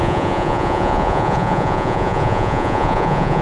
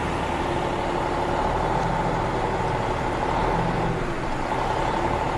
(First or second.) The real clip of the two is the second